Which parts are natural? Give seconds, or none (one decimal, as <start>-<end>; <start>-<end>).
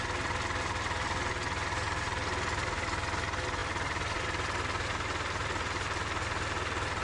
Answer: 0.0-7.0